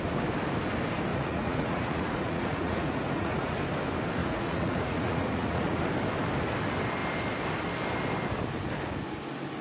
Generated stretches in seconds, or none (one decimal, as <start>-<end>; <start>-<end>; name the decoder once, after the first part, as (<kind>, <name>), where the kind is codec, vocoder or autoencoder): 1.1-3.6 (vocoder, Vocos); 4.2-5.8

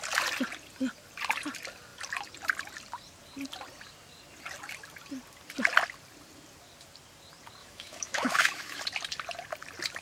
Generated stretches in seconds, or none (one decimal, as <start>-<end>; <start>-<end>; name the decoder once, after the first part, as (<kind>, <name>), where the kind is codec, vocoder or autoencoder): 7.6-8.8 (autoencoder, DAC-VAE)